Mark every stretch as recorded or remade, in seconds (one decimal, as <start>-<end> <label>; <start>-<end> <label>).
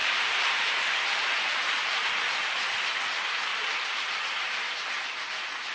0.0-2.7 remade; 2.7-3.5 recorded; 3.5-4.7 remade; 4.7-5.7 recorded